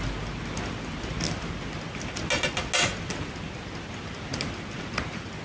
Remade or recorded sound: recorded